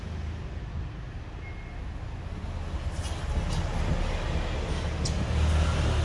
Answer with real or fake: real